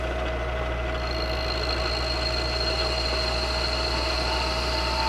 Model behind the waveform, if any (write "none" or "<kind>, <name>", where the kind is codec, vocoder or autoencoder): none